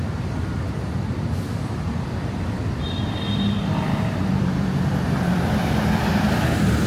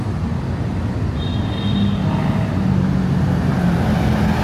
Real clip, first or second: second